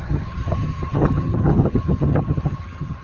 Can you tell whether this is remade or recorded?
remade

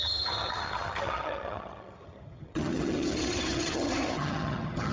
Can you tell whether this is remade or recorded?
remade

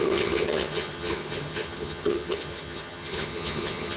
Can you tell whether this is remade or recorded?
remade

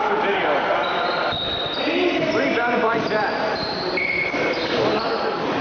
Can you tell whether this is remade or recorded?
recorded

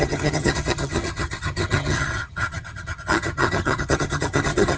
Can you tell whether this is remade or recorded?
remade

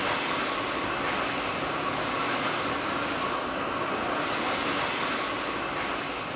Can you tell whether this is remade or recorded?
recorded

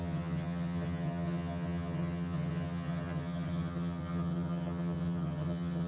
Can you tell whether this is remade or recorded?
remade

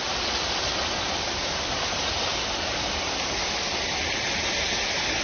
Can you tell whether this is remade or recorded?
recorded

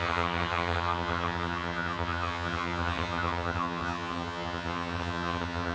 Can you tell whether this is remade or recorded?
remade